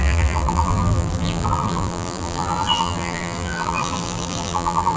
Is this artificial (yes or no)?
yes